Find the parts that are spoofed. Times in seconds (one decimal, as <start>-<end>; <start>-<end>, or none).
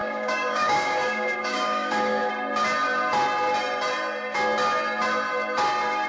0.0-2.3